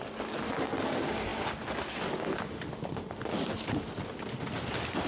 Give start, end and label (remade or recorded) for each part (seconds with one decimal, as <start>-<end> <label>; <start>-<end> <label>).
0.0-5.1 recorded